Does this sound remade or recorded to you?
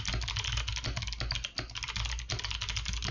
recorded